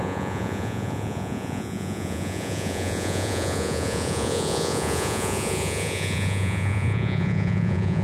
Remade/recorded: remade